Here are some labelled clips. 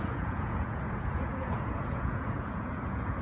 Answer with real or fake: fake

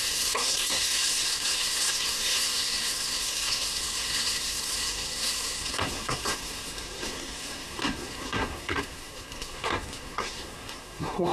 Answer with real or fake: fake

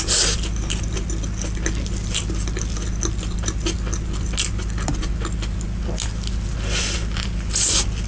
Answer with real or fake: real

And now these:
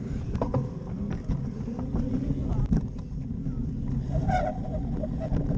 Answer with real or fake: real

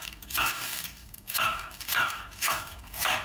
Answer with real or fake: fake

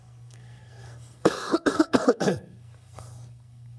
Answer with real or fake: fake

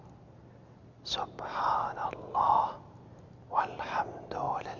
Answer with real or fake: real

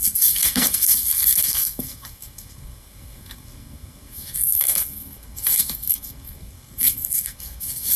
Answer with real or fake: fake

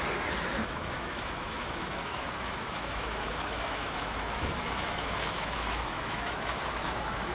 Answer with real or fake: fake